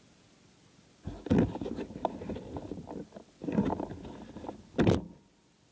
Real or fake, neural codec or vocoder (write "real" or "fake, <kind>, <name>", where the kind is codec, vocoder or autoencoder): real